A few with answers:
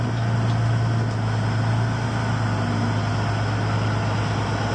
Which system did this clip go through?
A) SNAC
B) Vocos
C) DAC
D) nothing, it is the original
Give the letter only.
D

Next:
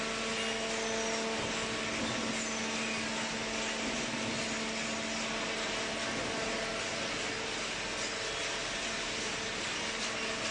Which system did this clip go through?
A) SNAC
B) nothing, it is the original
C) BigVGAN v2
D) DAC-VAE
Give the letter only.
B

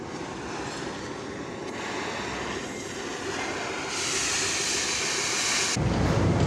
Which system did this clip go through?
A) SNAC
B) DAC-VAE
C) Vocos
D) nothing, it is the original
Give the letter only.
D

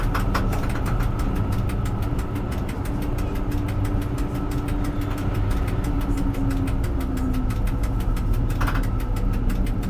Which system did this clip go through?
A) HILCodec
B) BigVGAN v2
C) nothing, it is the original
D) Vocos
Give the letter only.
C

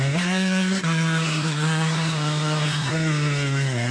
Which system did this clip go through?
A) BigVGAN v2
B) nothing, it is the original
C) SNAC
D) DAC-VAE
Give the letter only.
C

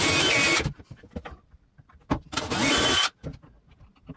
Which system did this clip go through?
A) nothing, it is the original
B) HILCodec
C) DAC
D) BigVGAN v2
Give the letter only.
A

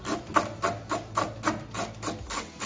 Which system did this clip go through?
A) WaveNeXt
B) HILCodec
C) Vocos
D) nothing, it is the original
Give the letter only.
D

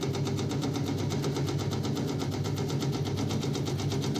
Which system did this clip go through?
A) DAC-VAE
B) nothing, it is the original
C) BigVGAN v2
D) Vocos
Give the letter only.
B